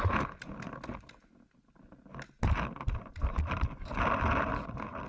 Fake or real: real